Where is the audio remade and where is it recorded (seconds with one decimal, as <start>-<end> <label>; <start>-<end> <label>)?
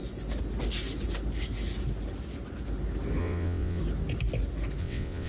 0.0-3.2 recorded; 3.2-3.8 remade; 3.8-4.8 recorded; 4.8-5.3 remade